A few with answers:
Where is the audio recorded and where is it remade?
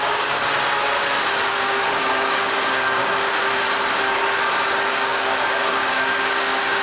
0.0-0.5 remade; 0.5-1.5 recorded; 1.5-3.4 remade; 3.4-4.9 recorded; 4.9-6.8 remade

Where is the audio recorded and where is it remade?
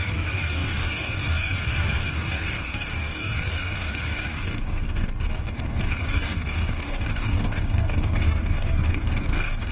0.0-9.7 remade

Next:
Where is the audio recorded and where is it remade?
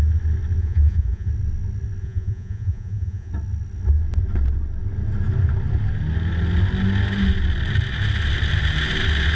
0.0-0.6 recorded; 0.6-1.3 remade; 1.3-2.0 recorded; 2.0-3.3 remade; 3.3-9.3 recorded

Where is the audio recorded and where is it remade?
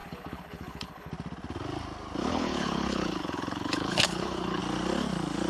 0.0-1.1 remade; 1.1-2.3 recorded; 2.3-4.6 remade; 4.6-5.5 recorded